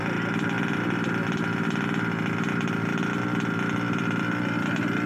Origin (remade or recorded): recorded